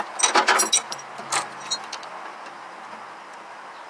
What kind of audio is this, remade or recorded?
recorded